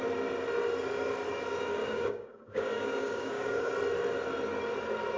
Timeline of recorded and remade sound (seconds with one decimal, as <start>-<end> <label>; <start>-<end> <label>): 0.0-1.8 recorded; 1.8-3.7 remade; 3.7-5.2 recorded

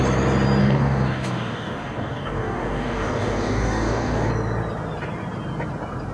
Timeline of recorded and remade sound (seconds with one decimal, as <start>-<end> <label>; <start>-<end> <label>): 0.0-0.6 recorded; 0.6-4.3 remade; 4.3-6.1 recorded

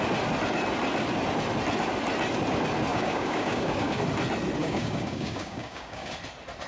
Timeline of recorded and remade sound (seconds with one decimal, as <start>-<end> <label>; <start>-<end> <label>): 0.0-2.9 recorded; 2.9-4.0 remade; 4.0-4.6 recorded; 4.6-6.1 remade; 6.1-6.7 recorded